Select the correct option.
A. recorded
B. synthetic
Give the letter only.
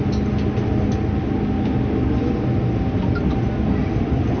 A